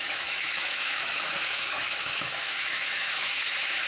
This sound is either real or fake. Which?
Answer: fake